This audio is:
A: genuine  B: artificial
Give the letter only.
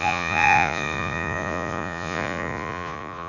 B